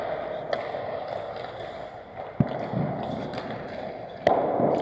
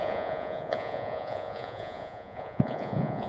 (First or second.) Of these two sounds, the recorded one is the first